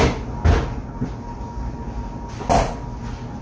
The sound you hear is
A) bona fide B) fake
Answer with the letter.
A